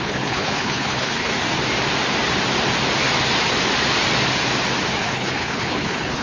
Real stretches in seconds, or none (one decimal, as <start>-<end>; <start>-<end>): 1.3-5.0